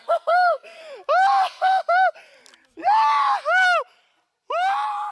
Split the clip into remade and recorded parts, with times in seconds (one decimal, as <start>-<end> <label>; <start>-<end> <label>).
0.0-0.8 remade; 0.8-1.3 recorded; 1.3-1.8 remade; 1.8-5.1 recorded